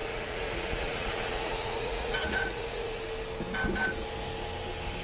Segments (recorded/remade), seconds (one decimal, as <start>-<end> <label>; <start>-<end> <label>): 0.0-3.0 remade; 3.0-5.0 recorded